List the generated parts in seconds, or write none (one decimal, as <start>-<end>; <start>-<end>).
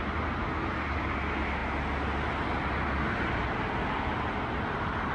none